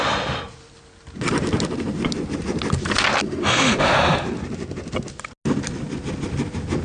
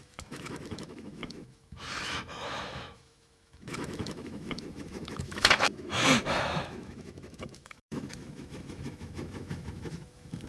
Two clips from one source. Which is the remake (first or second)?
second